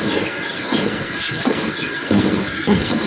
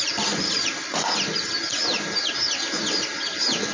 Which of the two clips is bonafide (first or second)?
second